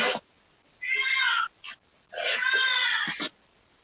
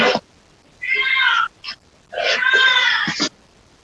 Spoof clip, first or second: second